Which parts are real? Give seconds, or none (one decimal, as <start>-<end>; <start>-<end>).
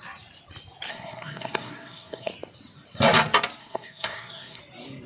0.0-0.9; 2.3-3.6; 4.6-5.1